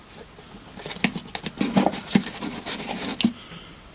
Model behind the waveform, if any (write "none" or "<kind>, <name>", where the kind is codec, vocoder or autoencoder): none